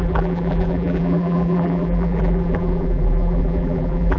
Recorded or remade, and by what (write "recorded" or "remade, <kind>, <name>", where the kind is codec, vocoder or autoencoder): remade, vocoder, BigVGAN v2